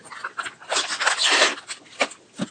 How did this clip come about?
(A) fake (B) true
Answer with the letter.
B